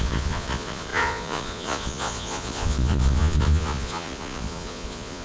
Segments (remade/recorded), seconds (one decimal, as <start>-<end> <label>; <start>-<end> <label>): 0.0-5.2 remade